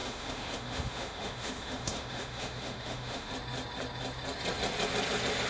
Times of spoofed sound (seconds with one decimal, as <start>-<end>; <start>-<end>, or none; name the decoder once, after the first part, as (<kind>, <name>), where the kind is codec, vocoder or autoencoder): 0.0-3.3 (autoencoder, DAC-VAE)